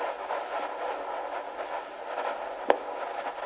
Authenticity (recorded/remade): recorded